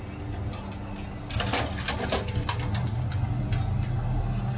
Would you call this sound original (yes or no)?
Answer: yes